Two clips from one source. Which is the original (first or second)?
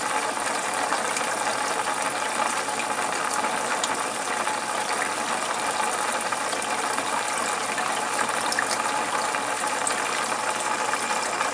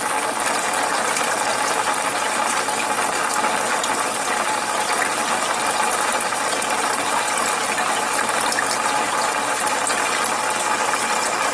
second